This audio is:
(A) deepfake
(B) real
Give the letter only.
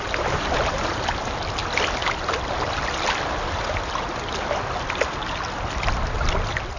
B